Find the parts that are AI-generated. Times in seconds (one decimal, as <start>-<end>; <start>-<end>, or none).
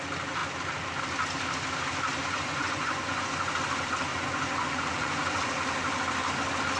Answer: 2.2-3.5; 4.1-5.6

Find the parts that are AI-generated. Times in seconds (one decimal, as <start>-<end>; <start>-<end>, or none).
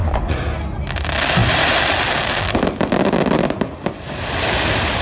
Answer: 0.0-0.5